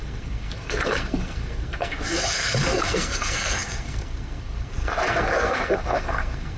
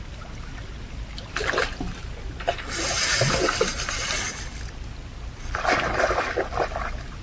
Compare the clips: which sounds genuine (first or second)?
second